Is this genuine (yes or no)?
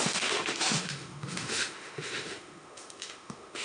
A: no